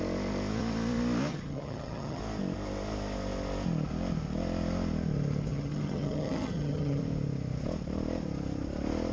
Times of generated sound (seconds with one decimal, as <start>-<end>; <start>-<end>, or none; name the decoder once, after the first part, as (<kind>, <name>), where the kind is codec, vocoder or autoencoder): 1.3-2.2 (vocoder, HiFi-GAN); 5.5-7.0